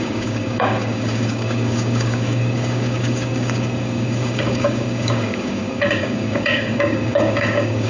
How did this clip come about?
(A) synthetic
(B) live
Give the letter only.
A